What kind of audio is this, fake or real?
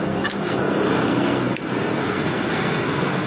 fake